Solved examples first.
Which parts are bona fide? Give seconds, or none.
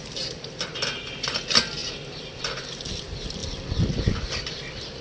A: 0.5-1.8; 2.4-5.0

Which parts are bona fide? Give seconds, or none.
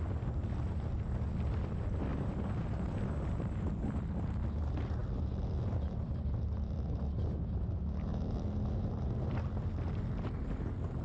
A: 0.0-2.1; 2.8-5.0; 9.7-11.0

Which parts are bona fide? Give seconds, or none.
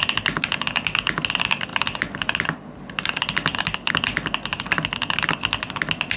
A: 0.0-1.7; 3.9-6.2